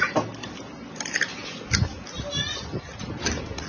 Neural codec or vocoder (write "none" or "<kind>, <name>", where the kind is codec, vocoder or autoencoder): none